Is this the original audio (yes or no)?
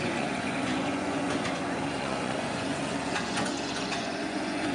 no